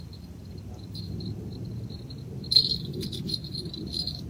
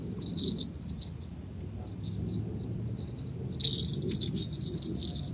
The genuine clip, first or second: second